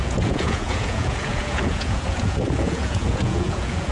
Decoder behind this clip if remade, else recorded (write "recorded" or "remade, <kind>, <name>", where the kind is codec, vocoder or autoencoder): remade, vocoder, Vocos